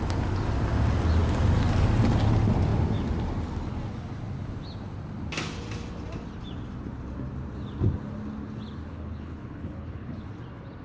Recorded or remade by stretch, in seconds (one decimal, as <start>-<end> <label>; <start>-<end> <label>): 0.0-8.9 recorded; 8.9-10.3 remade; 10.3-10.8 recorded